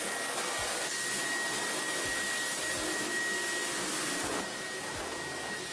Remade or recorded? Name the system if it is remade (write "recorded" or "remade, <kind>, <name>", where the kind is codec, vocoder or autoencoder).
recorded